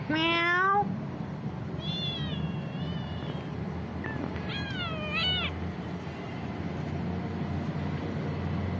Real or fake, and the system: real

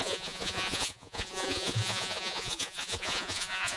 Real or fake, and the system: fake, vocoder, Vocos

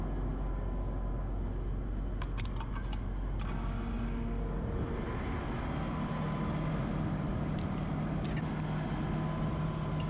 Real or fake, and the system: real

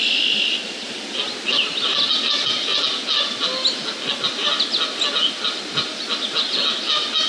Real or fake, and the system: real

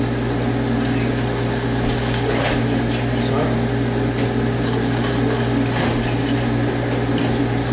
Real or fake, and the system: real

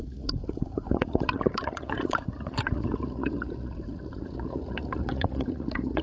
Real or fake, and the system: fake, vocoder, Vocos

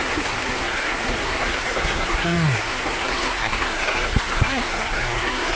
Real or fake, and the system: fake, codec, SNAC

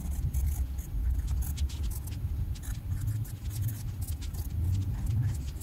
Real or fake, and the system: real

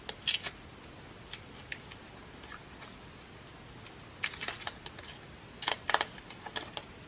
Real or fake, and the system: real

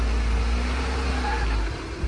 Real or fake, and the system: real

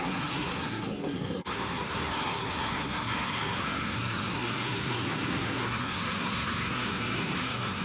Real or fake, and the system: fake, codec, SNAC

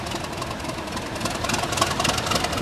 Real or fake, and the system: real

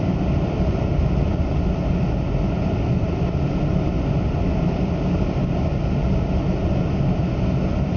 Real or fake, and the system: real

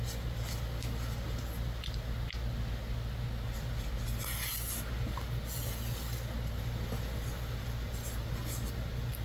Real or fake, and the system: real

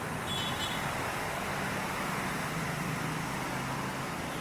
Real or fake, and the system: real